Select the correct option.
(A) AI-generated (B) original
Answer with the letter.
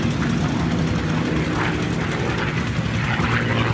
B